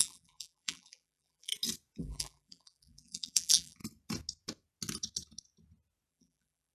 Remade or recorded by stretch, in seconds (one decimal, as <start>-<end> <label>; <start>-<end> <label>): 0.0-1.5 remade; 1.5-2.0 recorded; 2.0-3.8 remade; 3.8-6.1 recorded; 6.1-6.7 remade